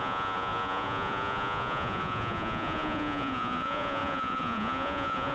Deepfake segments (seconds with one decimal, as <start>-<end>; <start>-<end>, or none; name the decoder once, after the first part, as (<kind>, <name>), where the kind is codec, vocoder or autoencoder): 0.0-5.3 (vocoder, Vocos)